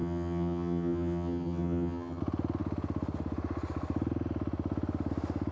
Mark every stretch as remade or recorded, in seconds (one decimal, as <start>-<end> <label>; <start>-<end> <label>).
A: 0.0-2.2 remade; 2.2-5.5 recorded